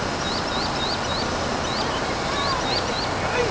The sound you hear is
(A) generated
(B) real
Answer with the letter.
B